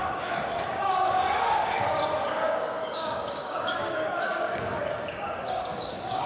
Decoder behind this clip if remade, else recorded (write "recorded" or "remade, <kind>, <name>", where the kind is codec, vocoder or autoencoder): remade, codec, DAC